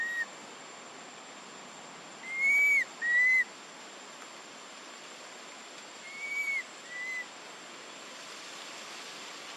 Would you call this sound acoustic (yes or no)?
yes